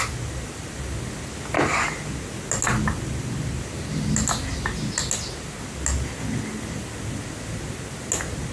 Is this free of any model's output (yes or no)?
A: yes